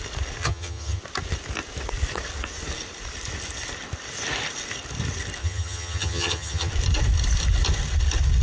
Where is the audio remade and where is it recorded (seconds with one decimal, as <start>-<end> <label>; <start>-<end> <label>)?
0.0-0.4 recorded; 0.4-1.0 remade; 1.0-5.4 recorded; 5.4-6.7 remade; 6.7-8.4 recorded